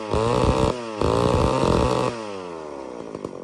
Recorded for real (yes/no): yes